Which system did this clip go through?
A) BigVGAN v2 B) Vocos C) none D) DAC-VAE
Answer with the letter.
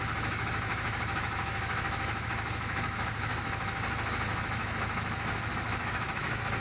D